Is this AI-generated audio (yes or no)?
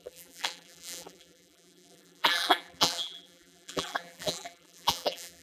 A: yes